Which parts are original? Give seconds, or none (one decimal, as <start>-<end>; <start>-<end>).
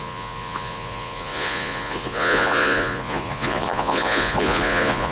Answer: none